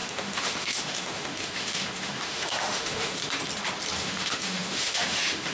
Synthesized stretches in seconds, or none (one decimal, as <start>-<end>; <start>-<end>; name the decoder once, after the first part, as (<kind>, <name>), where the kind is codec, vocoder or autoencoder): 0.0-3.2 (autoencoder, DAC-VAE); 4.0-5.5